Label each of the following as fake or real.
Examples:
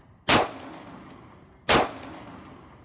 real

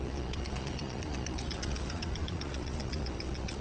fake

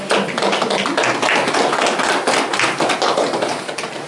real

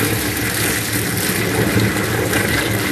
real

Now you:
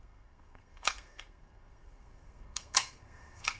fake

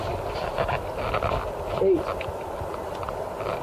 real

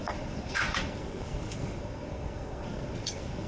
fake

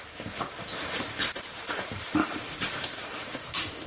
fake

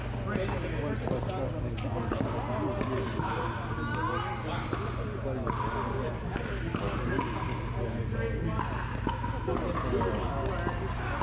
real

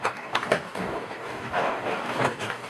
fake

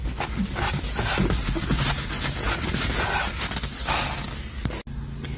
real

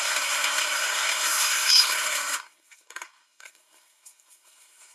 fake